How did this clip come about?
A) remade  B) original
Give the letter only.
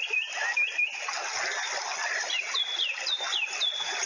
B